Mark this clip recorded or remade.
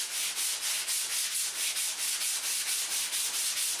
recorded